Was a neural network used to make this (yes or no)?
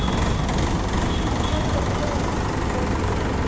no